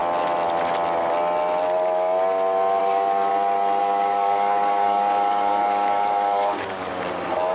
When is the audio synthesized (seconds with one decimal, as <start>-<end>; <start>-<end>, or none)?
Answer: 2.8-3.3; 3.8-6.9